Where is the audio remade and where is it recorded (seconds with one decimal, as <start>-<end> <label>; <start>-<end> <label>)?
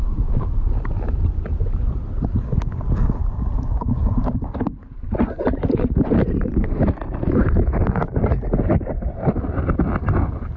0.0-1.5 recorded; 1.5-2.1 remade; 2.1-4.0 recorded; 4.0-8.9 remade; 8.9-10.6 recorded